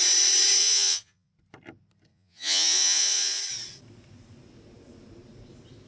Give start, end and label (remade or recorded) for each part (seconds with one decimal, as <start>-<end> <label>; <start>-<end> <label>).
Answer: 0.0-0.6 recorded; 0.6-1.3 remade; 1.3-2.1 recorded; 2.1-3.4 remade; 3.4-5.9 recorded